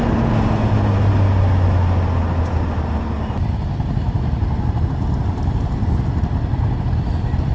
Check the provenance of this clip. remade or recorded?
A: recorded